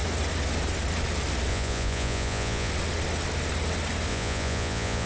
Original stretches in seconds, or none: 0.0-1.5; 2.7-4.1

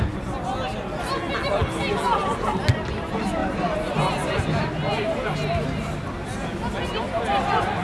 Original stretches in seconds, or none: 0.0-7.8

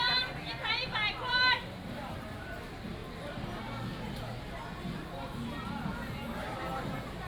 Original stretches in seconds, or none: 0.0-7.3

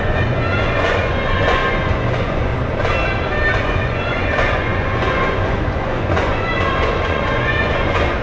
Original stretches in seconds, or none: 2.5-3.6